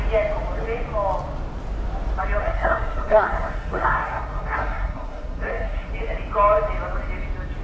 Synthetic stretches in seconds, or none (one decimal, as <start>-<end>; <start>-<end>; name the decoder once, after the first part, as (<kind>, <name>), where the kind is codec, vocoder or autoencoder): 2.4-5.9 (codec, SNAC)